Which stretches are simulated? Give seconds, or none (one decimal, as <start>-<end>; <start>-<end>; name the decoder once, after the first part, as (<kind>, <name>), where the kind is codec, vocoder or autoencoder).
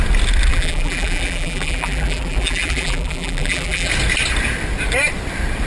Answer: 0.5-3.9 (vocoder, BigVGAN v2)